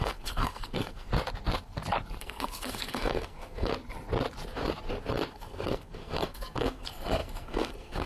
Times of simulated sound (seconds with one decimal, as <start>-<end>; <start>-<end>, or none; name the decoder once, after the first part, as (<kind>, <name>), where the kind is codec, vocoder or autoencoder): 0.0-1.1 (codec, SNAC); 2.2-3.7; 5.3-8.1